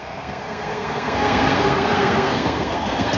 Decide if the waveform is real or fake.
fake